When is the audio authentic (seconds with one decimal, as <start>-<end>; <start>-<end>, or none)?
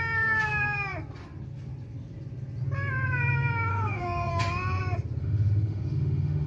0.0-3.7; 4.3-5.2